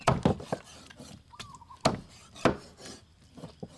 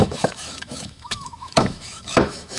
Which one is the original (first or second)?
first